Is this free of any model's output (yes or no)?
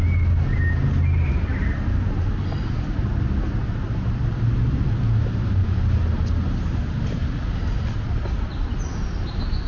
yes